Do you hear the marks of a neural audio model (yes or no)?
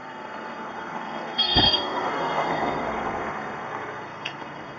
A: yes